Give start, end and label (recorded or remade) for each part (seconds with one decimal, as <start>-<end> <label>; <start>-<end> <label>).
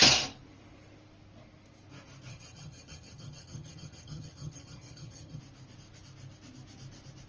0.0-2.3 recorded; 2.3-5.4 remade; 5.4-7.3 recorded